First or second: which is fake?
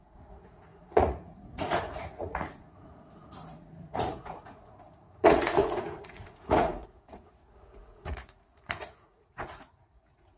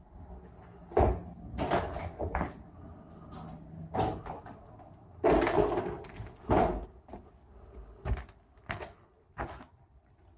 first